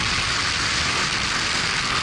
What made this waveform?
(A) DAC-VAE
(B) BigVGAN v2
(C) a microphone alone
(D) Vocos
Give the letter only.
C